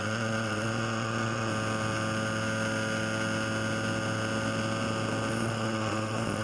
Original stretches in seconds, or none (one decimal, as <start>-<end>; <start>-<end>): 1.5-5.3